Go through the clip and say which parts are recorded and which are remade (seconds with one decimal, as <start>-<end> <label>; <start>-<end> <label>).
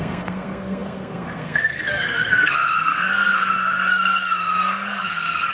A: 0.0-5.5 remade